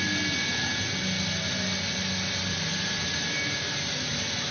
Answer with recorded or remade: recorded